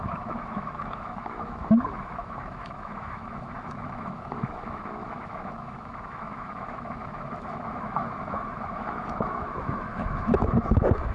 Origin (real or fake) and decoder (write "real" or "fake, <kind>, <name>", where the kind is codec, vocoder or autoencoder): fake, autoencoder, DAC-VAE